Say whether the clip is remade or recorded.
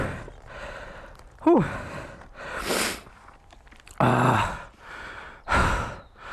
recorded